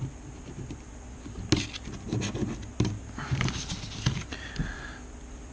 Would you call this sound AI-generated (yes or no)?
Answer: no